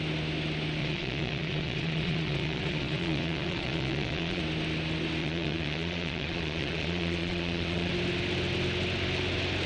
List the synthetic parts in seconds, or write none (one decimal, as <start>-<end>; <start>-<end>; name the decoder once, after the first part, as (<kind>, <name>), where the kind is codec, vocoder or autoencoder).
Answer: 0.8-4.4 (vocoder, Vocos); 5.2-7.9